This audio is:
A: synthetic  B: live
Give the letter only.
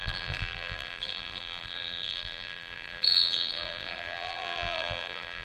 A